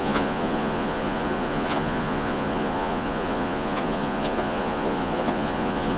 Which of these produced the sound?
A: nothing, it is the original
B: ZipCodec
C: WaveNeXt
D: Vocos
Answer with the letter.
D